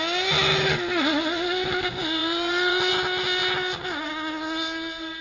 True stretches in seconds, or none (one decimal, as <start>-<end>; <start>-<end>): 0.0-2.2; 2.9-5.2